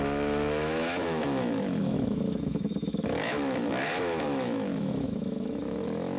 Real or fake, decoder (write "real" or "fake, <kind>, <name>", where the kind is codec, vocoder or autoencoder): fake, autoencoder, DAC-VAE